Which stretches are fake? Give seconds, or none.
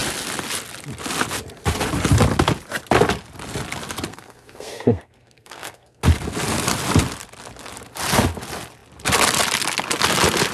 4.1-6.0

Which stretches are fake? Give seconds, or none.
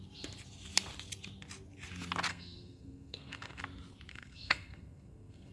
2.3-3.6; 4.1-5.5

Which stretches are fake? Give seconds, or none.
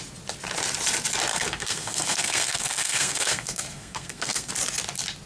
1.3-4.5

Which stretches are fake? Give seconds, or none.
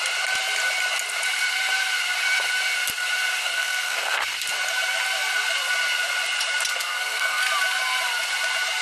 3.4-4.2; 6.7-7.4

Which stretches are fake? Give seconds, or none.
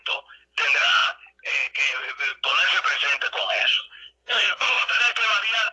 3.6-5.0